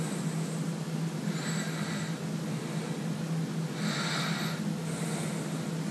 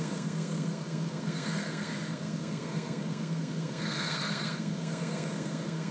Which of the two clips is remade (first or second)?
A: second